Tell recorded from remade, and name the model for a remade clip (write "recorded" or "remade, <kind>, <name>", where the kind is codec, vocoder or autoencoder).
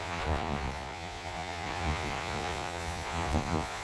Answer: remade, vocoder, Vocos